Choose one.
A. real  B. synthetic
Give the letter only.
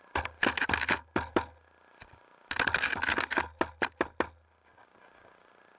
A